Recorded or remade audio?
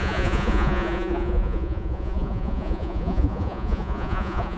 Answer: remade